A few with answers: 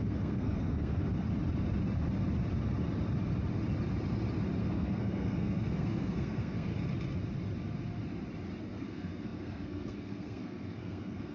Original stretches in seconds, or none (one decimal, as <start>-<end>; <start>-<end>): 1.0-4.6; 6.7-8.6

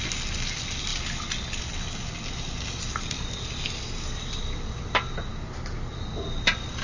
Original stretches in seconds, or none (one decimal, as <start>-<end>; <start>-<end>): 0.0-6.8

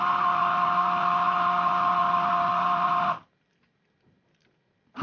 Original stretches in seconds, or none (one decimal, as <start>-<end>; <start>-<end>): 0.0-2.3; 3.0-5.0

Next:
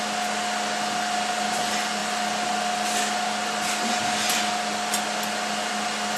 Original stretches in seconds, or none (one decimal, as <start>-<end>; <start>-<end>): 0.0-6.2

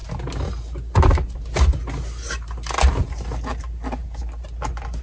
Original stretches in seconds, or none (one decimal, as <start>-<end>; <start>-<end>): 0.0-5.0